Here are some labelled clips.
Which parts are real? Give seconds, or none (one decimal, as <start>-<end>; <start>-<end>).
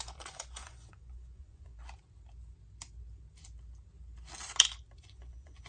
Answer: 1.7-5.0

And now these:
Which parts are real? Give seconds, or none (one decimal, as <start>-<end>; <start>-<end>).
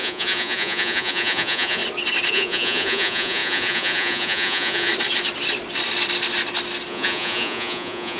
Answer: 1.8-2.3; 4.9-6.9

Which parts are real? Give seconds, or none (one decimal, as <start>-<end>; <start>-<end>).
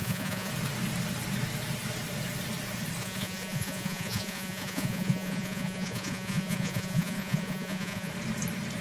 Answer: 0.5-3.0; 8.1-8.8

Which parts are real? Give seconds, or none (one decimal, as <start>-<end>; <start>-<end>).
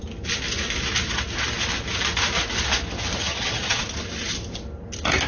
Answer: 0.0-3.2; 3.8-5.3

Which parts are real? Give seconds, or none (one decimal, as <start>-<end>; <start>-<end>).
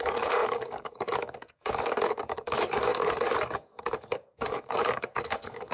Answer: none